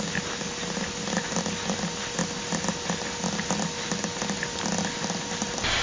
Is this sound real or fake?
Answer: real